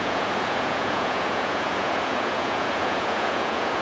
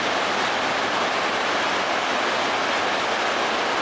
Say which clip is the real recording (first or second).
second